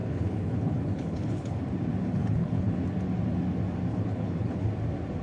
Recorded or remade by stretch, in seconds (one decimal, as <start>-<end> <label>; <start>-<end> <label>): 0.0-1.6 remade; 1.6-2.0 recorded; 2.0-2.8 remade; 2.8-3.9 recorded; 3.9-4.7 remade; 4.7-5.2 recorded